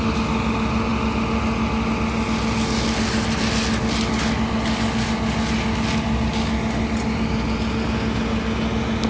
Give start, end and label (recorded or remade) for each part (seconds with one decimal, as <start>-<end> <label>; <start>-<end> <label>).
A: 0.0-9.1 recorded